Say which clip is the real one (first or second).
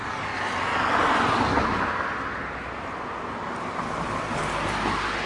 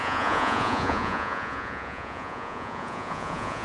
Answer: first